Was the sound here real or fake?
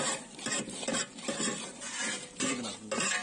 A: real